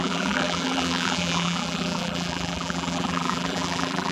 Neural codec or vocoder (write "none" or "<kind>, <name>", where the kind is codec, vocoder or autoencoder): vocoder, BigVGAN v2